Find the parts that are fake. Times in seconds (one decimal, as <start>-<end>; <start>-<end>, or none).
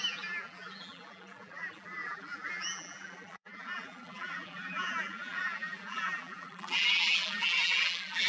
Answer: 0.0-8.3